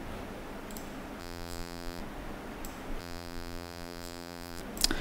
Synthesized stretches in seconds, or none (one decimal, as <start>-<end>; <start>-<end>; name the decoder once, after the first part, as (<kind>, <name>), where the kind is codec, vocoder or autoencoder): 1.2-2.0 (vocoder, BigVGAN v2); 3.0-4.6